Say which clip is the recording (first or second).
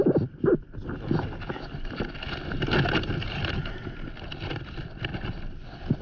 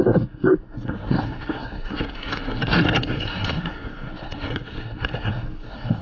first